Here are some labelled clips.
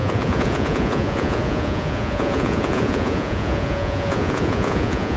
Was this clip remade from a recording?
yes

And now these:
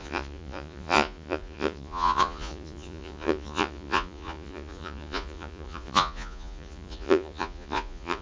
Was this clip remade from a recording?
yes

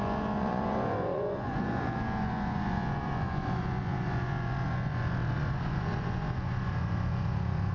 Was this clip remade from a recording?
yes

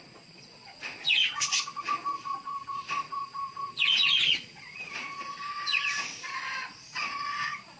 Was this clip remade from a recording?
yes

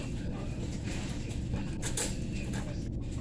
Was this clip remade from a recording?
no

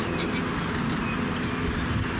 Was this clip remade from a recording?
no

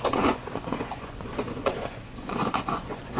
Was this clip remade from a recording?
yes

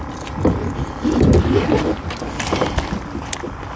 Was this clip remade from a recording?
no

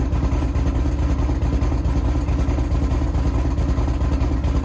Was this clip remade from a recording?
no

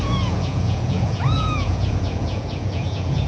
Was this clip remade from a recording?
yes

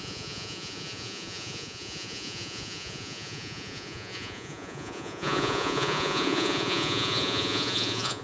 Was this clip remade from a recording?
yes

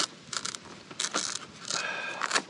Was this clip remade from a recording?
no